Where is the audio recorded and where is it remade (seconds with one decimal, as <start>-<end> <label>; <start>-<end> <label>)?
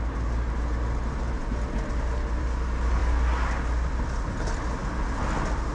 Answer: 0.0-5.7 recorded